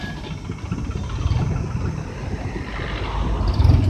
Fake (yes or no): yes